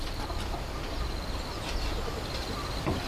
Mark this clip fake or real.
real